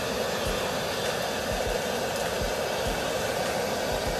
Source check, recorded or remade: recorded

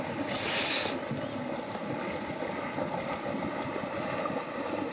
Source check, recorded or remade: recorded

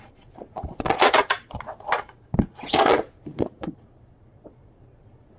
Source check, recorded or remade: remade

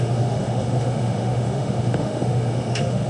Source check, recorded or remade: remade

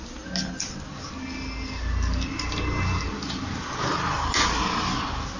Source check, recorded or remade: recorded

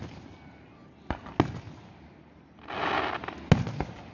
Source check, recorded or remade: recorded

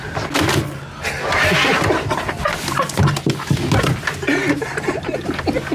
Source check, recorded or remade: recorded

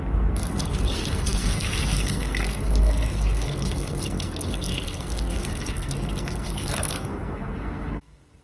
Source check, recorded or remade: remade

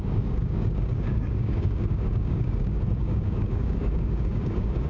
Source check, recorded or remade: remade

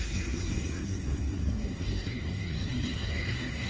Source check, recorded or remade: remade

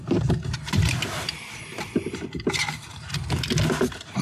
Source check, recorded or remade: remade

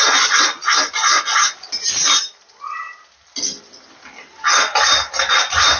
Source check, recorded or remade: recorded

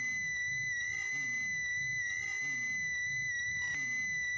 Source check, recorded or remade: recorded